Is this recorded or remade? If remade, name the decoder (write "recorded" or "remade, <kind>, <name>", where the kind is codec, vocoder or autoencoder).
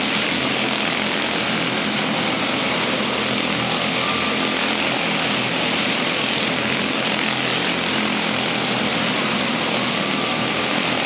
recorded